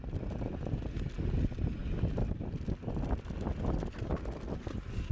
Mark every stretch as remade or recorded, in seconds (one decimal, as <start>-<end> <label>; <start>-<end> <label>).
0.0-5.1 recorded